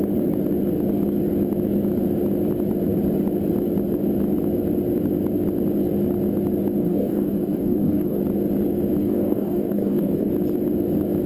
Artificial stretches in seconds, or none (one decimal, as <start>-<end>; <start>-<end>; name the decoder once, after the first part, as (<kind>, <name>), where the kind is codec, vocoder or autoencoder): 6.8-8.2 (codec, DAC); 9.0-10.3